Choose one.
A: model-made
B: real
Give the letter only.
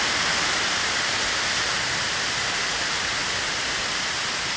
B